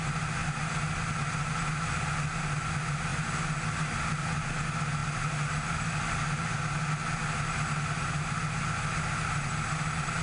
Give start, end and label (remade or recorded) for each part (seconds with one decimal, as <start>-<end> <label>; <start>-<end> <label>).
0.0-10.2 recorded